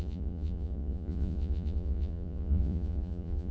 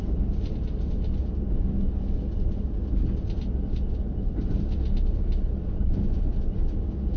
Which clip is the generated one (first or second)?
first